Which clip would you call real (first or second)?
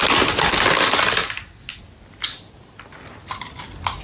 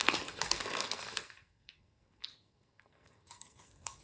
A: first